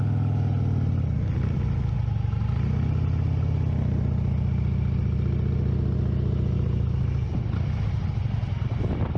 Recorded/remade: recorded